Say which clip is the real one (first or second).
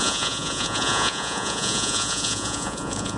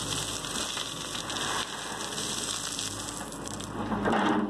second